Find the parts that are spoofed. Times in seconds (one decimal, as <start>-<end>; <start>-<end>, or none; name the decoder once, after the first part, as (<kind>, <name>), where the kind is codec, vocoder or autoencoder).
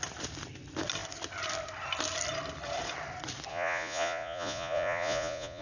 3.5-5.6 (vocoder, Vocos)